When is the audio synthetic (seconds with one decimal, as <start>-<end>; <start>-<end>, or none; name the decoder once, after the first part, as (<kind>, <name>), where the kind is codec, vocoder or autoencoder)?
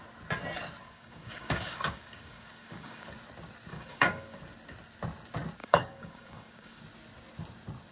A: 0.8-3.1 (codec, DAC); 3.7-4.4; 5.6-6.8